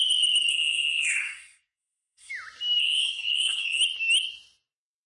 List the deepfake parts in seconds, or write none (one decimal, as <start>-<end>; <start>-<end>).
0.5-2.3; 2.8-3.8